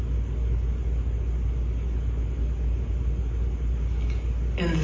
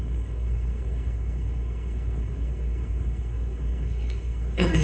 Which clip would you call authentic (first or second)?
first